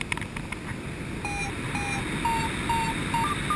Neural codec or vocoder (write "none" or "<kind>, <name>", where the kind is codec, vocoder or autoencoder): none